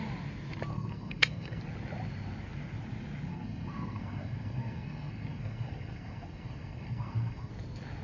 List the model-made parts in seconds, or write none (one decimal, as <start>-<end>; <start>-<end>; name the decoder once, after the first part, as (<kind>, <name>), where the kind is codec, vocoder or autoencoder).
0.7-1.6 (codec, SNAC); 3.3-7.5